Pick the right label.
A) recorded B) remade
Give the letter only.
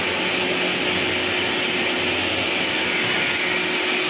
A